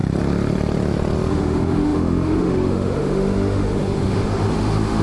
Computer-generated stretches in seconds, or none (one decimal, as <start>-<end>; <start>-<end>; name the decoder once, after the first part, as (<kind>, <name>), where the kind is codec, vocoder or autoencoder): 1.3-5.0 (autoencoder, DAC-VAE)